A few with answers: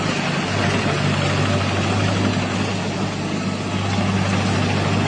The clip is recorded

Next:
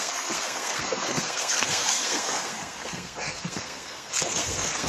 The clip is remade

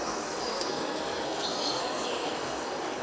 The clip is remade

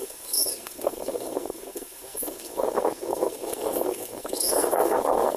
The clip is remade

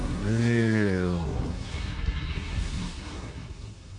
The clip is remade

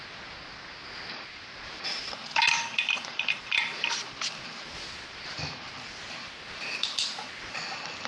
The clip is recorded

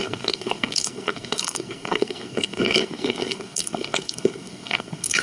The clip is remade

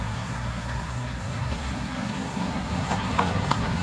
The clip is remade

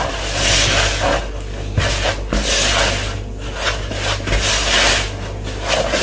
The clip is recorded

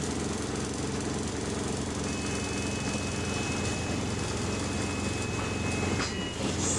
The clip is recorded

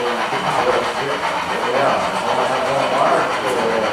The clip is remade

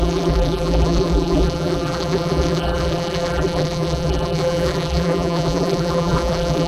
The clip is remade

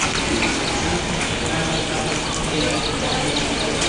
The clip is recorded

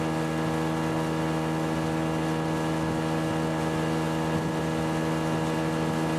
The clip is recorded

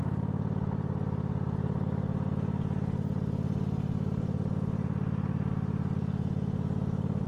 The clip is recorded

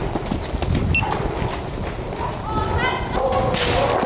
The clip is recorded